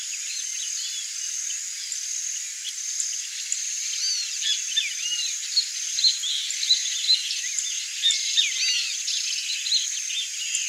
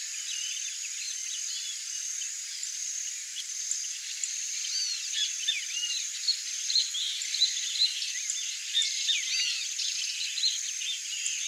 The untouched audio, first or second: first